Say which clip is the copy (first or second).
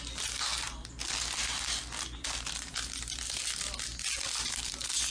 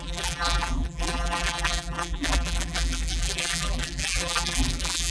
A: second